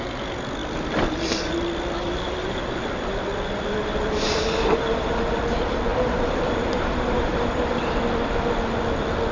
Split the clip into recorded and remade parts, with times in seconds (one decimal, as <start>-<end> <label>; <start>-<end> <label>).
0.0-5.9 recorded; 5.9-8.0 remade; 8.0-9.3 recorded